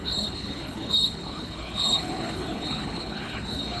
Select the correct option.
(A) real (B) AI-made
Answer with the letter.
B